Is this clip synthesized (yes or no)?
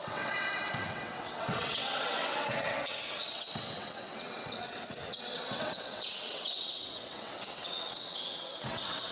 yes